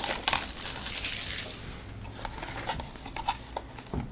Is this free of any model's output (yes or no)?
yes